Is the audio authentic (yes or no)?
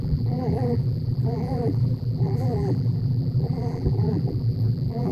no